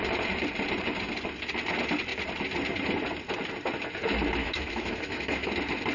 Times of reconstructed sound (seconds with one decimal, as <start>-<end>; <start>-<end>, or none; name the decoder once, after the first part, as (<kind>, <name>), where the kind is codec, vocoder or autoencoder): 4.4-5.5 (autoencoder, DAC-VAE)